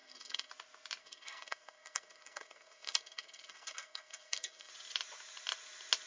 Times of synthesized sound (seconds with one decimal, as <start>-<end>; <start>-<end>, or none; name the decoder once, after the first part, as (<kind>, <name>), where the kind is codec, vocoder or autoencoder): 0.0-0.5 (codec, SNAC); 1.0-4.7

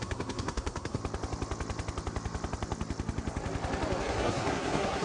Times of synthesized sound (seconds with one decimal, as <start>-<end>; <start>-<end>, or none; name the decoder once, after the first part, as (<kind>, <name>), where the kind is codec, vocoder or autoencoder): 0.0-1.0 (codec, SNAC); 4.0-5.0

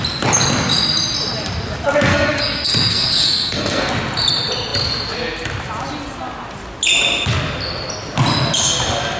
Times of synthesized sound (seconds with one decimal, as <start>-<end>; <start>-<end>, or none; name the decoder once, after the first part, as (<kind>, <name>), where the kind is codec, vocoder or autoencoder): 2.1-3.9 (codec, SNAC)

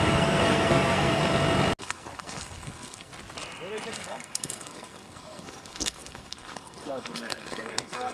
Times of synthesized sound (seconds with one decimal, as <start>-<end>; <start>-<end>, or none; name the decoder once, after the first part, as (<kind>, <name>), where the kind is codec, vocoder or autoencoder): 0.0-1.2 (codec, SNAC); 1.8-3.1; 3.9-8.1